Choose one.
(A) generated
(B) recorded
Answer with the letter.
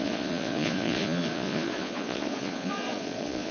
A